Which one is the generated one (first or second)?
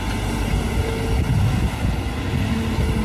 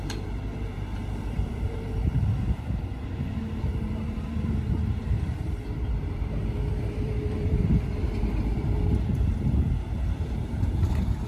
second